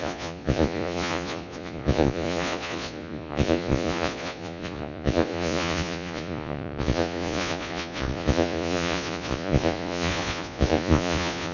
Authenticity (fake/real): fake